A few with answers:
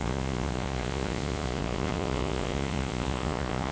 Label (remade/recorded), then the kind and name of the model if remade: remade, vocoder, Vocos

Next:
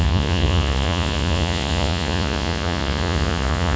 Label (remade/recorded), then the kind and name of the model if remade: remade, vocoder, Vocos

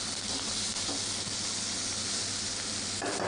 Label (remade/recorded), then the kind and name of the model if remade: recorded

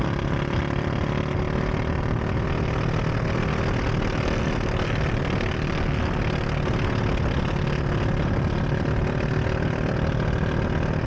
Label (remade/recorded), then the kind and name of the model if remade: recorded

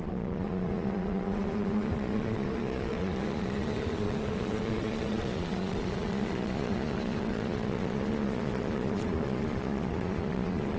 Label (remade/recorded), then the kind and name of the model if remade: remade, vocoder, Vocos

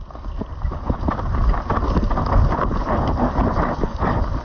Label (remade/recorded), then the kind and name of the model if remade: recorded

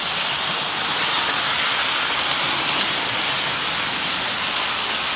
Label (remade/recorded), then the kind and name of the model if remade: recorded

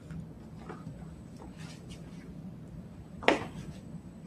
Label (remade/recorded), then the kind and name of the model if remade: recorded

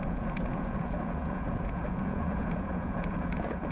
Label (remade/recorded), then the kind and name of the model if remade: remade, vocoder, Vocos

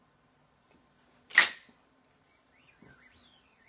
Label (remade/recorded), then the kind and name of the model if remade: recorded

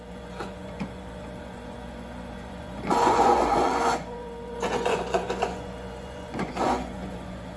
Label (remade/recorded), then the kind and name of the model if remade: remade, vocoder, Vocos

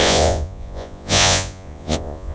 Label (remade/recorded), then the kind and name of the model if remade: remade, vocoder, Vocos